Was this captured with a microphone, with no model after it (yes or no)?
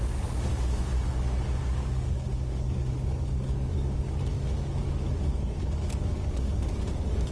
no